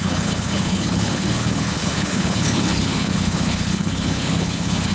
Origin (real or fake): fake